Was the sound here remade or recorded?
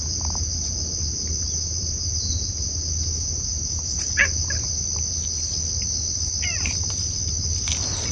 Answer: recorded